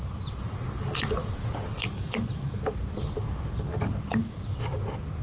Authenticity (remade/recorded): recorded